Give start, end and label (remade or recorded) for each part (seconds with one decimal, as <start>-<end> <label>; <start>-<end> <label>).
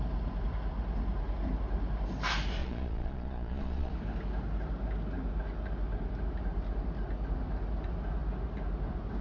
0.0-2.6 recorded; 2.6-3.9 remade; 3.9-9.2 recorded